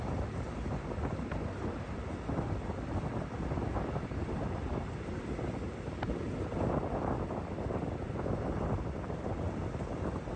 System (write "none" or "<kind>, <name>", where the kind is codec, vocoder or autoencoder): none